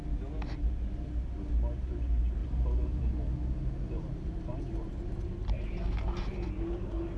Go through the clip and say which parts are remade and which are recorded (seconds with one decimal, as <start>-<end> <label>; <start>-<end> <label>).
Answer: 0.0-7.2 recorded